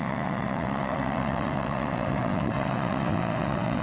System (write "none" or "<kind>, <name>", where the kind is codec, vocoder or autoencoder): vocoder, WaveNeXt